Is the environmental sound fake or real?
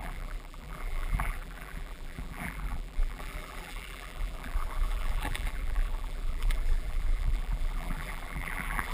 fake